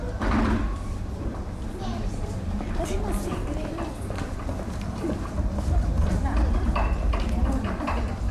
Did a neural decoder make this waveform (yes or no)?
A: yes